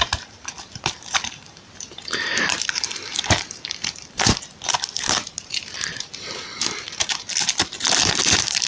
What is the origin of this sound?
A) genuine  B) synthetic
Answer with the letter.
B